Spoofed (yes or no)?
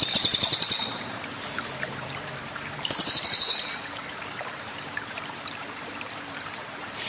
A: yes